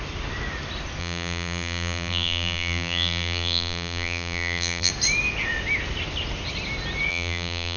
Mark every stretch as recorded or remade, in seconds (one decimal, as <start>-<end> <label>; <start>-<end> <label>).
0.0-1.0 recorded; 1.0-4.9 remade; 4.9-7.1 recorded; 7.1-7.8 remade